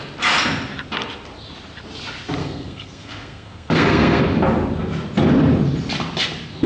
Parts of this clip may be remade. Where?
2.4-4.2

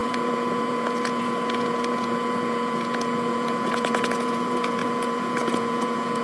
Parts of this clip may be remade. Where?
0.0-6.2

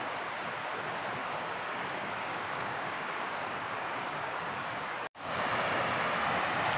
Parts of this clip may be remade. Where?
1.2-5.3

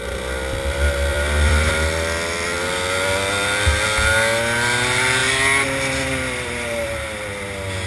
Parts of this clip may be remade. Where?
1.1-1.7